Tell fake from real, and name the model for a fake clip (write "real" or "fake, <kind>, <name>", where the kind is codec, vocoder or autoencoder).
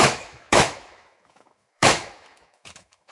fake, autoencoder, DAC-VAE